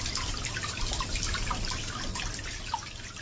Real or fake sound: real